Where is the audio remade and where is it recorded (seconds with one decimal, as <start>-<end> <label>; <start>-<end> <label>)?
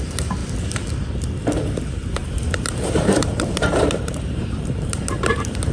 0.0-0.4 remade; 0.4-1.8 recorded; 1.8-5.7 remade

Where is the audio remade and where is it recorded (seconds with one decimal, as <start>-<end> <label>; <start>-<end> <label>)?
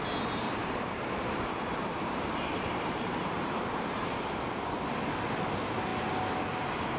0.0-0.6 recorded; 0.6-4.8 remade; 4.8-7.0 recorded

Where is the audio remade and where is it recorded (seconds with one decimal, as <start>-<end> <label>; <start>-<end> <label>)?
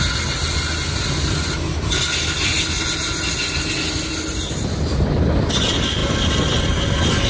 0.0-7.3 recorded